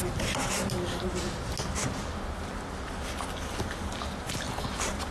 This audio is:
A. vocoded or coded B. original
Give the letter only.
B